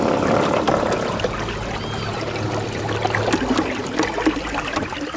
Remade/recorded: recorded